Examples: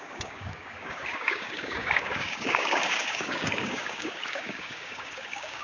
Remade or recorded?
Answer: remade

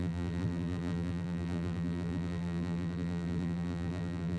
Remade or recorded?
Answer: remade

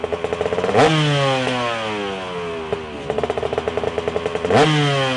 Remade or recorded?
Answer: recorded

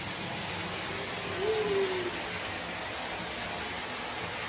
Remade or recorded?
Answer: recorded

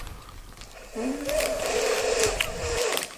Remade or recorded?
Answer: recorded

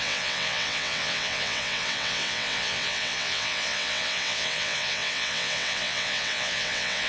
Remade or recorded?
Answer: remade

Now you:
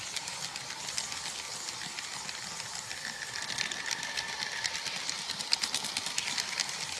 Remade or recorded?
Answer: recorded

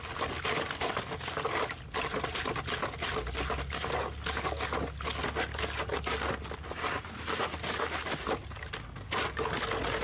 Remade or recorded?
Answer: recorded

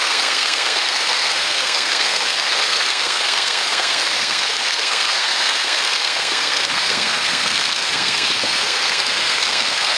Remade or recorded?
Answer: remade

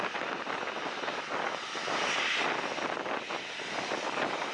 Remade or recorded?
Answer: recorded